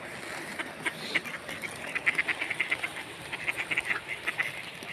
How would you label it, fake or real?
real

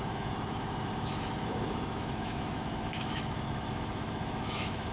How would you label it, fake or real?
fake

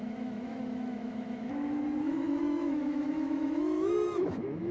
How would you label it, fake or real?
fake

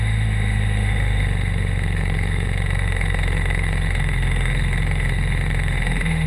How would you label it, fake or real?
fake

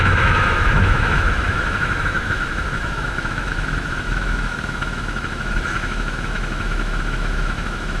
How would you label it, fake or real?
fake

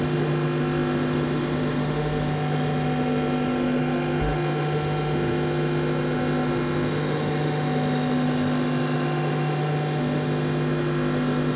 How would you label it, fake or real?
fake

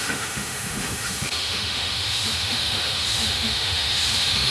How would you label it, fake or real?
fake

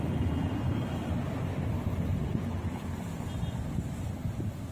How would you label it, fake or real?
real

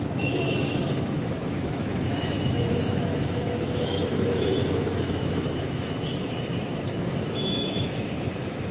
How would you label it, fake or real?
fake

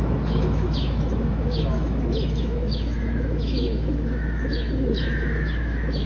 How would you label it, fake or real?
fake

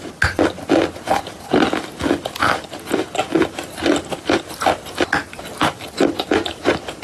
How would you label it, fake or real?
real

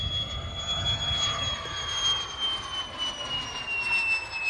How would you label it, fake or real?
real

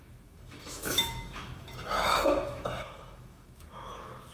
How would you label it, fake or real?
fake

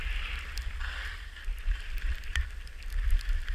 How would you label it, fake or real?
real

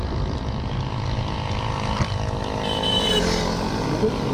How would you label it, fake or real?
real